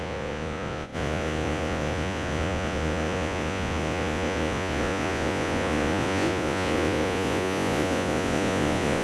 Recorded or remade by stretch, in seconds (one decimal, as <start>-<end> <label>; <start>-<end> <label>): 0.0-9.0 remade